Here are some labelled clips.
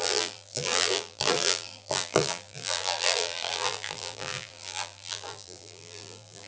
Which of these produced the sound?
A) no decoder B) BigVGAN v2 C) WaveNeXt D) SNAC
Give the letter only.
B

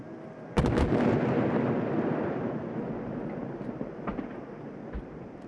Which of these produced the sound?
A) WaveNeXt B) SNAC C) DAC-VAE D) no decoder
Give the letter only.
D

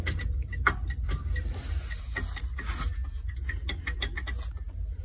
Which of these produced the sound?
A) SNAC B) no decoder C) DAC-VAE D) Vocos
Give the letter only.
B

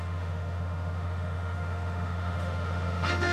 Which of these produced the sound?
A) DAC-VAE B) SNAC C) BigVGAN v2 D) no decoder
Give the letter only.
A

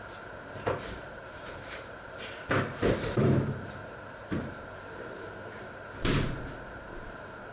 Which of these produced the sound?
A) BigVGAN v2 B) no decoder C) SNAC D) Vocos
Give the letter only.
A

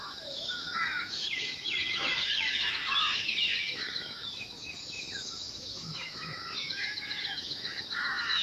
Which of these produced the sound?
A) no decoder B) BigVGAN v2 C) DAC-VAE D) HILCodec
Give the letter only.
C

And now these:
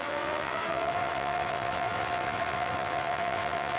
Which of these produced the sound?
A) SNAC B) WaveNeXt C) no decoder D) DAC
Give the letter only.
B